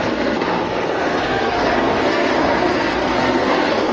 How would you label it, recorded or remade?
remade